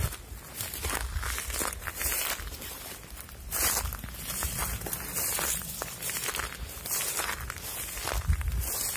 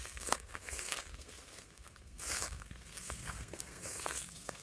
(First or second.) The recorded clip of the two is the first